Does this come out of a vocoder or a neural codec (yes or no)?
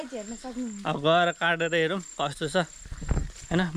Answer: no